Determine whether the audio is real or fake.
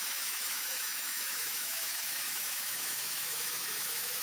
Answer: fake